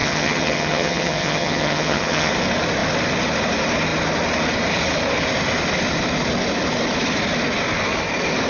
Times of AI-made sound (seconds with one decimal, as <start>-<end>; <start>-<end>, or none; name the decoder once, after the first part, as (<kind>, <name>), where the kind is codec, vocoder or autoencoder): 0.0-2.3 (vocoder, HiFi-GAN)